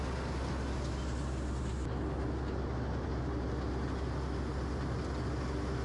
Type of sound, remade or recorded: recorded